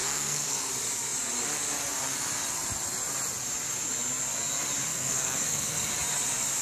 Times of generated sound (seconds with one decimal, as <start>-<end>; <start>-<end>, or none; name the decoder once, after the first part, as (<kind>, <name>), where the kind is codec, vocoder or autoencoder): 0.0-0.7 (codec, SNAC); 4.9-5.9